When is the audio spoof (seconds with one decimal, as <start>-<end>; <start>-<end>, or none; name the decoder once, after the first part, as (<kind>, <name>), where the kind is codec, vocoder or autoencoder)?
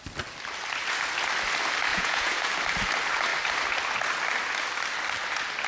1.9-2.5 (vocoder, Vocos)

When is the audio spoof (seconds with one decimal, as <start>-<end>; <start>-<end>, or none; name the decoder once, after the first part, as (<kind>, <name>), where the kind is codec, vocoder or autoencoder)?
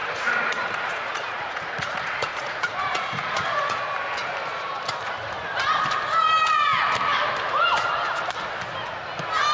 0.0-3.8 (vocoder, Vocos)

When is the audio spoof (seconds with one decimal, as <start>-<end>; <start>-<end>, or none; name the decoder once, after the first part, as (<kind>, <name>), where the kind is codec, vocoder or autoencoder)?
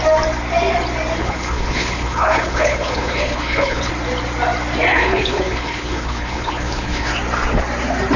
1.2-3.9 (codec, HILCodec); 4.9-7.1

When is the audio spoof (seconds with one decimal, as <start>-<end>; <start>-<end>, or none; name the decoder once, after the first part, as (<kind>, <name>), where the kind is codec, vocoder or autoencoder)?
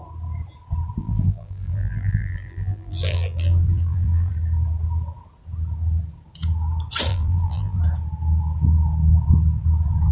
1.0-4.3 (vocoder, BigVGAN v2); 7.1-7.8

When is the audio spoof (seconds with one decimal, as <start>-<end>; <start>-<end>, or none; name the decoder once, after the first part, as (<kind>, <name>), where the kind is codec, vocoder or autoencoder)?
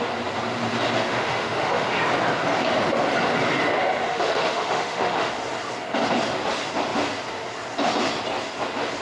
1.1-2.0 (autoencoder, DAC-VAE); 4.1-5.3